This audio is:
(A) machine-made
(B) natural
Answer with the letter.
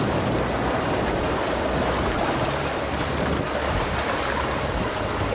A